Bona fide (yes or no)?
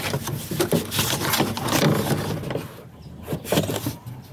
yes